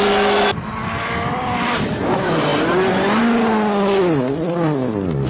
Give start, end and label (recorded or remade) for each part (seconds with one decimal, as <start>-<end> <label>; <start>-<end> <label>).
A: 0.0-5.3 recorded